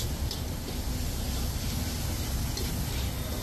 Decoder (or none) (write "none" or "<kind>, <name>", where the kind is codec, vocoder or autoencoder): none